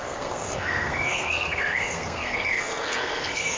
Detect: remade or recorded remade